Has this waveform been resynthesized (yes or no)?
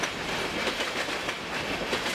no